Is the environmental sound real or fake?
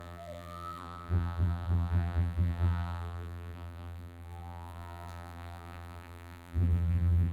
fake